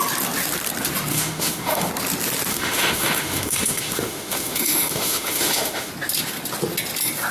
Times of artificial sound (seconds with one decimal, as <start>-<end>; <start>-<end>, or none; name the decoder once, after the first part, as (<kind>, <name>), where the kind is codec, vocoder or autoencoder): 1.1-1.9 (autoencoder, DAC-VAE); 2.5-5.9